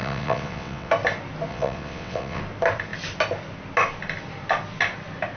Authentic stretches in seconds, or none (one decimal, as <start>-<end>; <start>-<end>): 0.9-1.5; 2.4-5.4